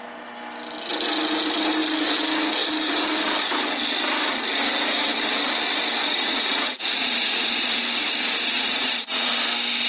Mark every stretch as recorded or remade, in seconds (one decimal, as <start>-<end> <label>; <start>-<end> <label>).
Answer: 0.0-6.0 recorded; 6.0-7.8 remade; 7.8-8.5 recorded; 8.5-9.3 remade; 9.3-9.9 recorded